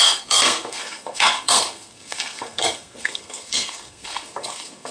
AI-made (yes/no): yes